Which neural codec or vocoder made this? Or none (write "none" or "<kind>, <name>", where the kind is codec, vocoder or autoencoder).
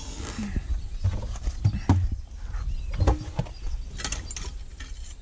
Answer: none